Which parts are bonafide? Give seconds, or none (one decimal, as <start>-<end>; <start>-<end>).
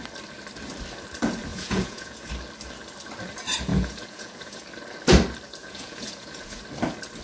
0.0-1.5; 2.3-3.7; 4.6-5.6; 6.6-7.2